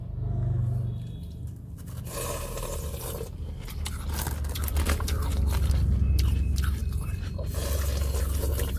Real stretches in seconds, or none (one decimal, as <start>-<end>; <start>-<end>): 0.0-8.8